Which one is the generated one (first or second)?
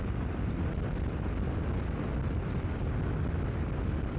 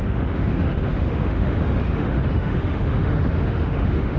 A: second